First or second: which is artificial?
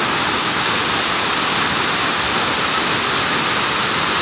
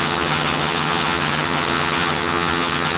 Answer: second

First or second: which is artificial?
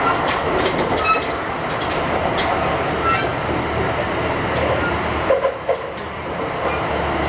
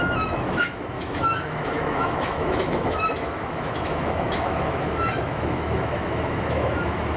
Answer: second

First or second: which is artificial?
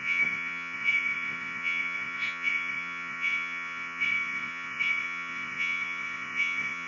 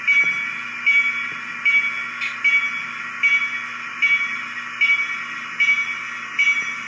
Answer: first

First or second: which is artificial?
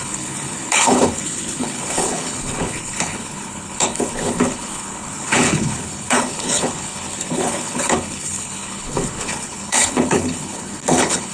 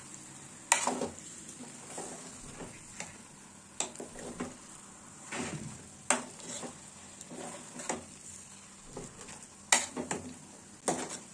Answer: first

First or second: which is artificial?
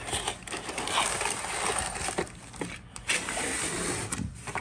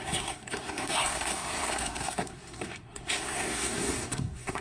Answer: second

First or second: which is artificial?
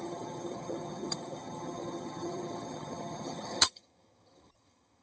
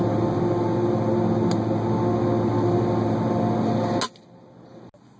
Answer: first